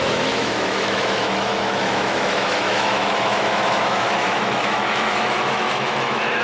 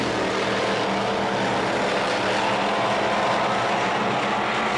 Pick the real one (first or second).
second